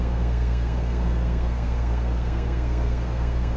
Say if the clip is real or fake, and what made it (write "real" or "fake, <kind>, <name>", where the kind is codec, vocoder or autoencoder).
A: fake, codec, SNAC